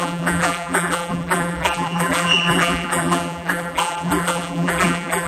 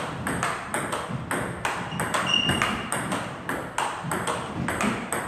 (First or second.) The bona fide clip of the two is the second